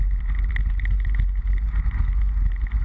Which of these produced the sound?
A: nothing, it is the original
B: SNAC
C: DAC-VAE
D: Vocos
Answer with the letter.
A